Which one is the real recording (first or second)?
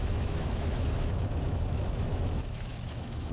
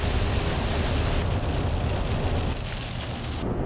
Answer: second